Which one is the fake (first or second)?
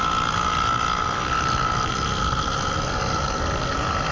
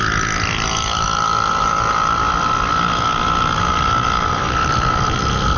second